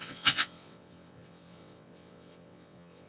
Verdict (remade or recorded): remade